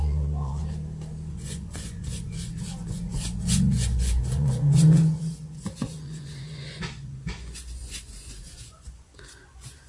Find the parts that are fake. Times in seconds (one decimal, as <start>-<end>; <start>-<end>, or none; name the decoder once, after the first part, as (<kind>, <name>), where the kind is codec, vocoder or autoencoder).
0.0-0.6 (vocoder, Vocos); 1.3-9.9